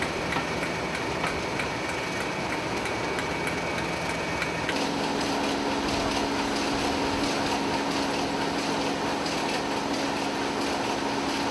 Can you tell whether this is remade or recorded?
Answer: recorded